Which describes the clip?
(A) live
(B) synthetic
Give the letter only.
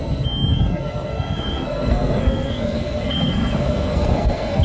B